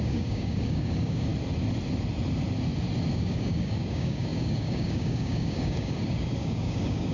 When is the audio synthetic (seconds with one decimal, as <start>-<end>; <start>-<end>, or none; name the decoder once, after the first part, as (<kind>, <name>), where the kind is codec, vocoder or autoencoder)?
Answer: 0.0-1.3 (codec, DAC); 3.1-7.1